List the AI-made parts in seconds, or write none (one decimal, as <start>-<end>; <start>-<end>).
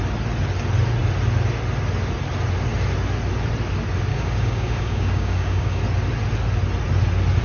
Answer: 4.1-5.8